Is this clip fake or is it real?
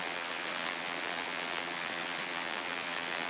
fake